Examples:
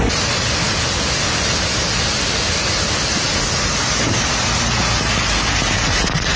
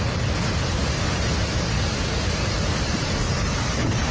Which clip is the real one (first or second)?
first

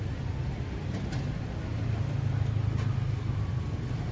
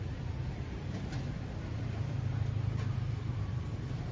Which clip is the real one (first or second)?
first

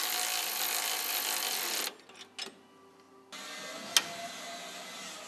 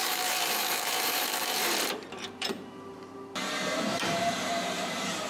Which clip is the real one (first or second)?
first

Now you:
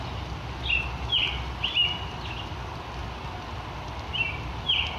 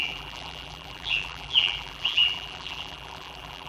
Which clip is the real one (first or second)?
first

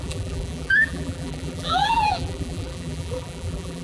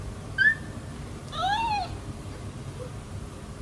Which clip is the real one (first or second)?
second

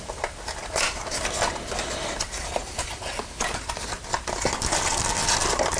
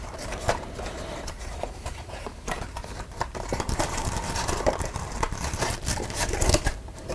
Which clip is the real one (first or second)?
first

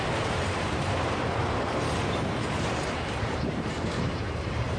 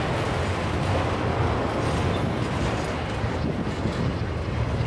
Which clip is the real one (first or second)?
second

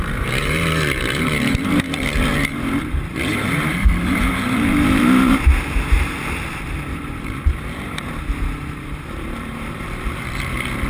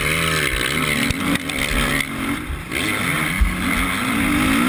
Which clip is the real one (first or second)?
second